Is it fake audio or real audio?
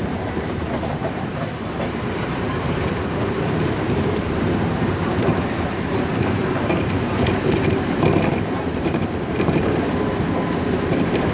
fake